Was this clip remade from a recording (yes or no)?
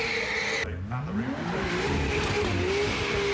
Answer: no